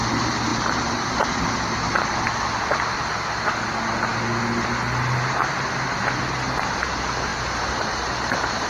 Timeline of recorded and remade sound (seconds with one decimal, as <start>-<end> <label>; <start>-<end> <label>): 0.0-0.5 recorded; 0.5-1.4 remade; 1.4-7.3 recorded; 7.3-8.7 remade